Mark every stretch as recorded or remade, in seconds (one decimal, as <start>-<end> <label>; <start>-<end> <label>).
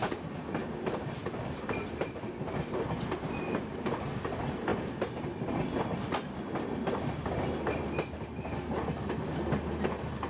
0.0-4.7 recorded; 4.7-7.3 remade; 7.3-10.3 recorded